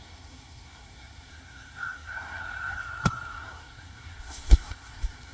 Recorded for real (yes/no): no